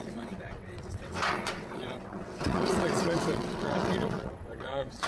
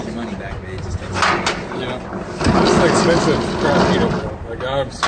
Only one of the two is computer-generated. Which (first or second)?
first